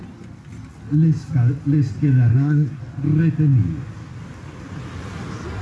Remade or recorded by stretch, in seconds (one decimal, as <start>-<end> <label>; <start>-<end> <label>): 0.0-2.3 recorded; 2.3-2.8 remade; 2.8-5.6 recorded

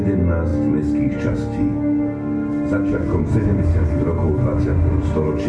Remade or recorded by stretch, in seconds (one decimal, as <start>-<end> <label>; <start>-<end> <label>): 0.0-5.5 recorded